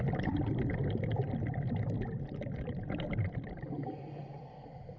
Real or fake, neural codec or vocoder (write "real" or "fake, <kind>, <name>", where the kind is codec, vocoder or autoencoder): real